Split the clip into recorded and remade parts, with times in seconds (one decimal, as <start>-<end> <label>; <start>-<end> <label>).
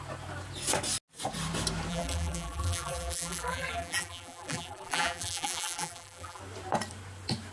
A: 0.0-1.9 recorded; 1.9-6.4 remade; 6.4-7.5 recorded